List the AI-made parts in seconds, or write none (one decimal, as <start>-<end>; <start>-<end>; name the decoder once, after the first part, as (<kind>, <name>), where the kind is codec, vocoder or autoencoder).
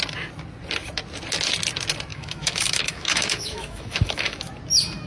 2.1-4.5 (autoencoder, DAC-VAE)